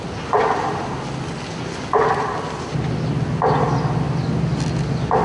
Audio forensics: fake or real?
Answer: real